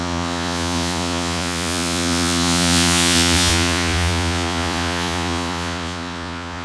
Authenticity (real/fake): fake